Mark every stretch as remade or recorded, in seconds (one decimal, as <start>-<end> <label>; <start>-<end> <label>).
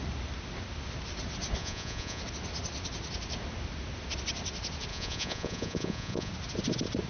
0.0-1.6 recorded; 1.6-2.2 remade; 2.2-4.9 recorded; 4.9-6.3 remade; 6.3-7.1 recorded